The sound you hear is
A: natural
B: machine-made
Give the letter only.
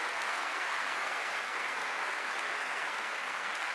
B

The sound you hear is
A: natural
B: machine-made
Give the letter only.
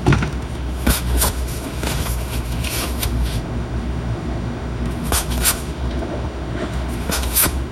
B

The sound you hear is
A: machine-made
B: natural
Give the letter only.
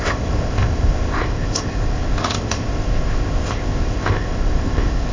A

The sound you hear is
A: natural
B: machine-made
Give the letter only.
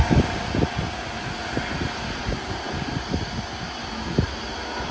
A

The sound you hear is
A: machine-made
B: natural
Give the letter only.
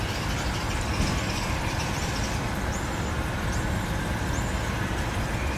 B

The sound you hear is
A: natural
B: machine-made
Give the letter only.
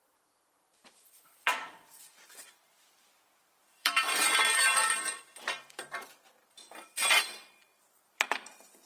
B